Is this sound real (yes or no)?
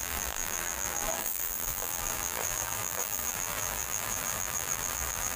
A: no